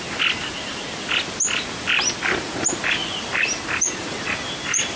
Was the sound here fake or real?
real